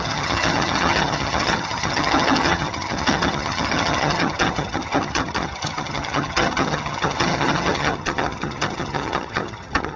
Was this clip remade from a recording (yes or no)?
yes